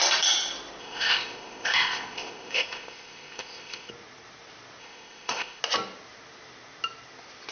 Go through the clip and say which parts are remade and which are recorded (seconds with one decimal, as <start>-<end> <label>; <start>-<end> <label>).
0.0-0.8 recorded; 0.8-3.9 remade; 3.9-4.8 recorded; 4.8-5.6 remade; 5.6-7.5 recorded